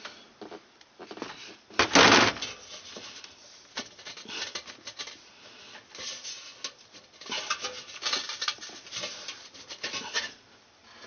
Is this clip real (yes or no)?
yes